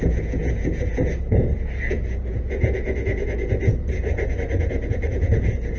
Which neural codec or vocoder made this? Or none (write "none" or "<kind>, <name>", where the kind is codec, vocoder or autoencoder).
vocoder, Vocos